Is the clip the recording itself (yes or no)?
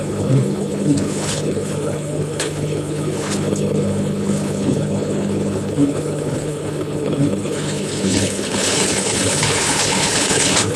no